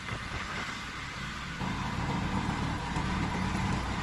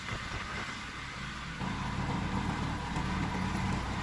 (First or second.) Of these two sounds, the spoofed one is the first